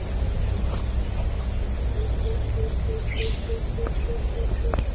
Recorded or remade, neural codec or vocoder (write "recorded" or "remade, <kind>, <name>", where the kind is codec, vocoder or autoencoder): recorded